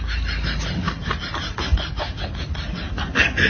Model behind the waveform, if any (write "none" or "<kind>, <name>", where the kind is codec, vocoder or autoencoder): none